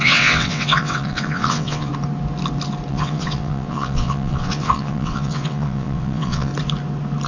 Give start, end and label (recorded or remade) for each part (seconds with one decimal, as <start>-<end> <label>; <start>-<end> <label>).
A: 0.0-1.9 remade; 1.9-2.9 recorded; 2.9-6.5 remade; 6.5-7.3 recorded